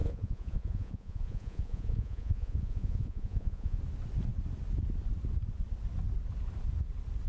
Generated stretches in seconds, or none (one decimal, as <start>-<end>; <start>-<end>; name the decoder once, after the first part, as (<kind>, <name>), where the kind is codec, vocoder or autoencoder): 0.0-3.8 (vocoder, Vocos)